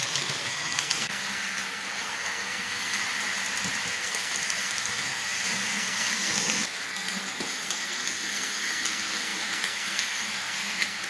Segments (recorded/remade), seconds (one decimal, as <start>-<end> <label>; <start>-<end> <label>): 0.0-3.0 remade; 3.0-3.9 recorded; 3.9-11.1 remade